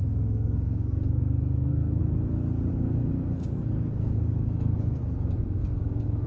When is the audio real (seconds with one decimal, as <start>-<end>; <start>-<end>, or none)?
2.0-2.7